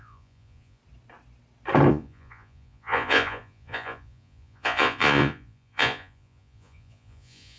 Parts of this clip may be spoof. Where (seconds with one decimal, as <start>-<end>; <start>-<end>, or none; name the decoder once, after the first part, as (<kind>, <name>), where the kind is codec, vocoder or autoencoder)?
0.0-0.8 (vocoder, Vocos); 1.9-7.6